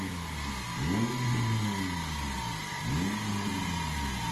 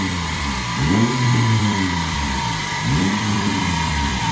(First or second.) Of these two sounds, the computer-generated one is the second